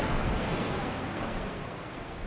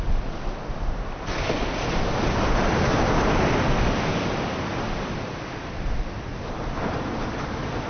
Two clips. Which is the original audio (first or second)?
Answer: second